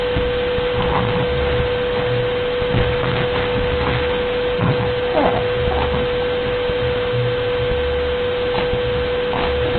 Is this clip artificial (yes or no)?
no